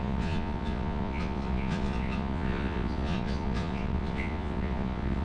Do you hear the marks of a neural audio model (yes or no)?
yes